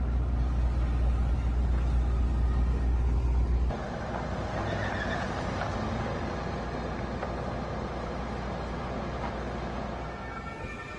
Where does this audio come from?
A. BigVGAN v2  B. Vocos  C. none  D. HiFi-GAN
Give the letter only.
C